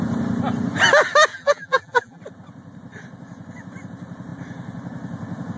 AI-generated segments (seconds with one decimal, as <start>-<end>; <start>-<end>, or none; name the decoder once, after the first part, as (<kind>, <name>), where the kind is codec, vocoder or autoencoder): 1.3-2.2 (vocoder, BigVGAN v2)